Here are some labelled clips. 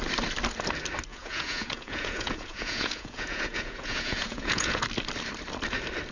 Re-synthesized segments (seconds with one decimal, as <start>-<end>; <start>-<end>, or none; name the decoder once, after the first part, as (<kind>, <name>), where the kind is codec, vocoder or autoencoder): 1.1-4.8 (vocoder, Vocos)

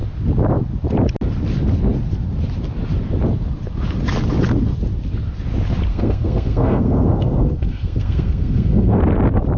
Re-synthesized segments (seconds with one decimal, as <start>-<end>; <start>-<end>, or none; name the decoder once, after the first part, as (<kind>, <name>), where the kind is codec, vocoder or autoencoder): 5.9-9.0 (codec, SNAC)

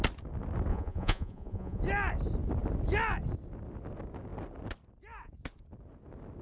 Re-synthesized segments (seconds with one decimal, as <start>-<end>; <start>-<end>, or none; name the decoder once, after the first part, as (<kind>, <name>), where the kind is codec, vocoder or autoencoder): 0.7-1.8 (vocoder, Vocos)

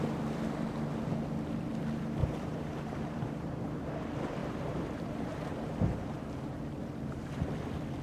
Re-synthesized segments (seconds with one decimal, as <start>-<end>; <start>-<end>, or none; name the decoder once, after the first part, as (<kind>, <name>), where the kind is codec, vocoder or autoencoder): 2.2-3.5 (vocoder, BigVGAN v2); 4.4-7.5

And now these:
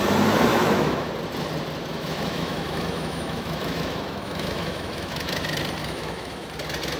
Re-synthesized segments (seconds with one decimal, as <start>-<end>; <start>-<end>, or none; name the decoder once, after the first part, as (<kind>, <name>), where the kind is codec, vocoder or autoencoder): 0.5-1.1 (autoencoder, DAC-VAE); 1.9-5.3; 5.8-6.5